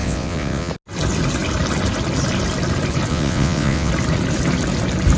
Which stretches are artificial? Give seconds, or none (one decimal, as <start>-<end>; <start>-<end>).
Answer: 0.0-0.7; 3.1-3.9